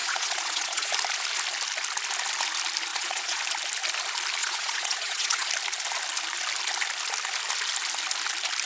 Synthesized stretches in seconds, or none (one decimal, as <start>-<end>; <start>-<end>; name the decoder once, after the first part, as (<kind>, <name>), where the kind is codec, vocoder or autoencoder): 0.0-0.9 (vocoder, Vocos); 2.9-3.4; 4.4-5.5

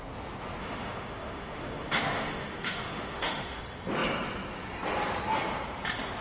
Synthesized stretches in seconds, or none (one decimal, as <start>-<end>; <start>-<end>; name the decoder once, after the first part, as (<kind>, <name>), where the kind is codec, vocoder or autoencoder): 0.6-3.6 (autoencoder, DAC-VAE)

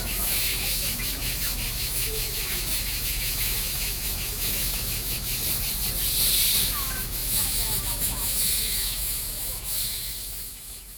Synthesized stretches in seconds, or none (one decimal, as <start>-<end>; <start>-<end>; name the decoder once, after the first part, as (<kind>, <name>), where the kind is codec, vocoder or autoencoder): 0.0-5.3 (autoencoder, DAC-VAE); 6.6-11.0

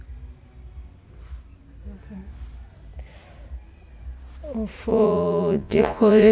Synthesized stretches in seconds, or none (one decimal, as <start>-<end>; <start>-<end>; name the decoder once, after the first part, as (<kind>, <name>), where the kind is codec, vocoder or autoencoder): 4.9-6.3 (vocoder, Vocos)

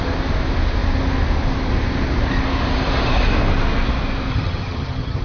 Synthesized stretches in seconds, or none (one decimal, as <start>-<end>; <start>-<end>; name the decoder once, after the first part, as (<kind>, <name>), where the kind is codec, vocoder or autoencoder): 4.3-5.2 (vocoder, HiFi-GAN)